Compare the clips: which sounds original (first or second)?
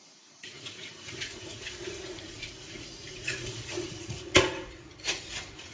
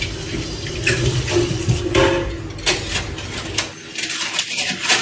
second